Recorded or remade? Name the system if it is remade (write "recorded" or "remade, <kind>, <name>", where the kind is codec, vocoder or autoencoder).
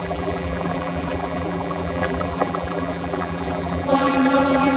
remade, vocoder, BigVGAN v2